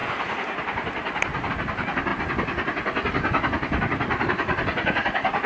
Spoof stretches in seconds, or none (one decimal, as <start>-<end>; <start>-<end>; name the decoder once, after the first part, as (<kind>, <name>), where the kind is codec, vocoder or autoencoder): none